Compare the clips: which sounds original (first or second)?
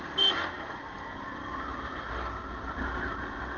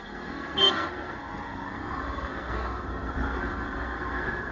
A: first